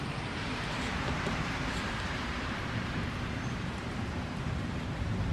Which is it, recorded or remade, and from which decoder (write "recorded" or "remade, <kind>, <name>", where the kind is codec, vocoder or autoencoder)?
remade, vocoder, BigVGAN v2